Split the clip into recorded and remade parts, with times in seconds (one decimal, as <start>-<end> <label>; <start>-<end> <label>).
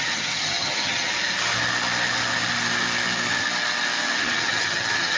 0.0-1.1 remade; 1.1-4.2 recorded; 4.2-5.2 remade